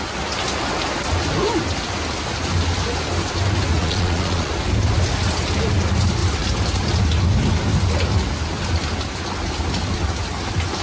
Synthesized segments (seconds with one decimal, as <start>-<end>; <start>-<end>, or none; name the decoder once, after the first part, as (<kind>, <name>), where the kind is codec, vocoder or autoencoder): 3.8-4.5 (vocoder, Vocos)